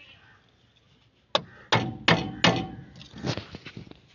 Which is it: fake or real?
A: real